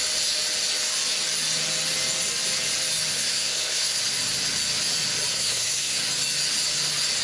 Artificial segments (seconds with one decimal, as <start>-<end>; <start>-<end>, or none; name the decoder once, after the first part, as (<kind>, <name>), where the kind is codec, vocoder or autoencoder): 3.1-4.0 (codec, SNAC); 5.3-6.0